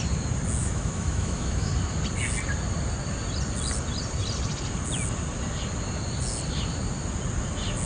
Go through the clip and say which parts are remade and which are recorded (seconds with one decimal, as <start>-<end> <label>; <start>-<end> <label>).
0.0-0.6 recorded; 0.6-1.7 remade; 1.7-7.9 recorded